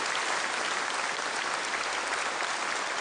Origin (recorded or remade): recorded